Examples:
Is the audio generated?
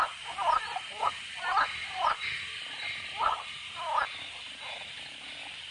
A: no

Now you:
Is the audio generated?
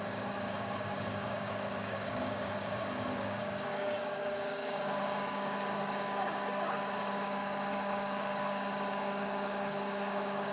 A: yes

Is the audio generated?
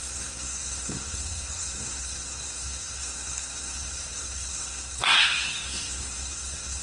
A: yes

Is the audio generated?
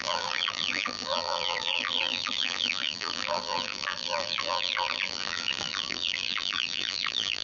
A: yes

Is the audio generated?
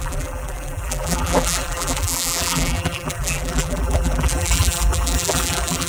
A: yes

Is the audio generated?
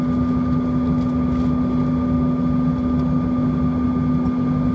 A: no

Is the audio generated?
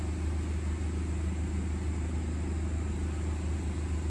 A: no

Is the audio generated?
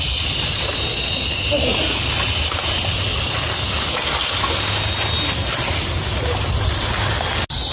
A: no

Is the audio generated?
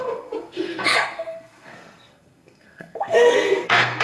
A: yes